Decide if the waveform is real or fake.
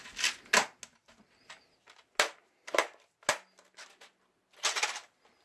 real